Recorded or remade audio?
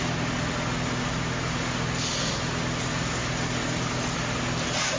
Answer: recorded